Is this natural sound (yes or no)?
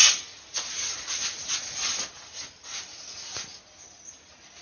yes